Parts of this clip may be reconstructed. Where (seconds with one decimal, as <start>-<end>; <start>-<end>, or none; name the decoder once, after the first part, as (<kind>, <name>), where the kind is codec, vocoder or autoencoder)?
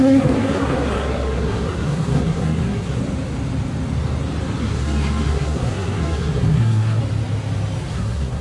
0.0-3.0 (codec, SNAC); 4.6-7.0; 7.9-8.4